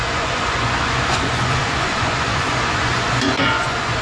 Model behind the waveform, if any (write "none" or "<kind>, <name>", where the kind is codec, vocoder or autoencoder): vocoder, Vocos